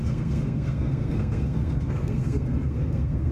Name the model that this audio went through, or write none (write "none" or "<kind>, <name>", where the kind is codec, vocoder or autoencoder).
codec, SNAC